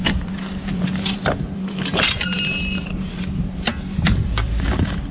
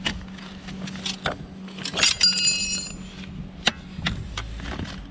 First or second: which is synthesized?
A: first